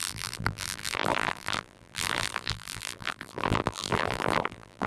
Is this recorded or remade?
remade